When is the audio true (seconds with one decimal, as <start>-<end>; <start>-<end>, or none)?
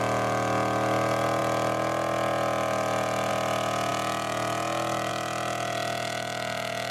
0.0-6.9